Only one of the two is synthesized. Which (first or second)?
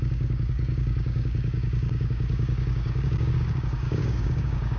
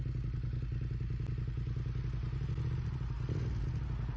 first